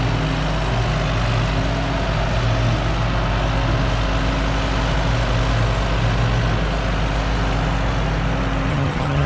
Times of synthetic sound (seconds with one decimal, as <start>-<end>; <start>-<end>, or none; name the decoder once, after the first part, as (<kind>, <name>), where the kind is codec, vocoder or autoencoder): 8.7-9.3 (vocoder, HiFi-GAN)